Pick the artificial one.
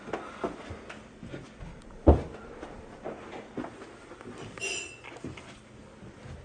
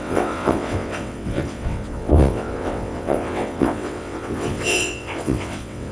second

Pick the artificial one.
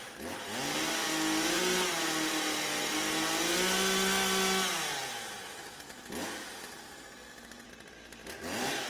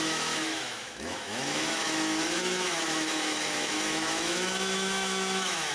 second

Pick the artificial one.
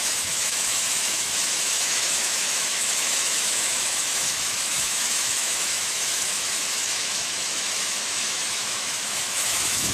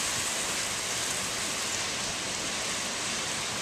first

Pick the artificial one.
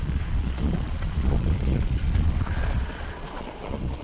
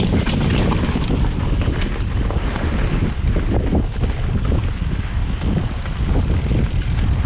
first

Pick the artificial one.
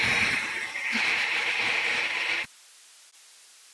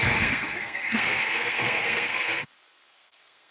second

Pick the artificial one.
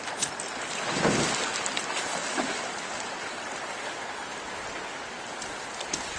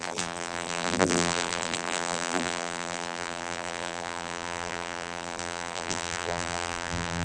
second